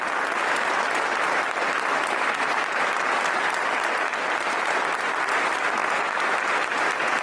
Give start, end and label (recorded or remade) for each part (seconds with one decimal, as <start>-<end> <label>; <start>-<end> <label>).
0.0-7.2 recorded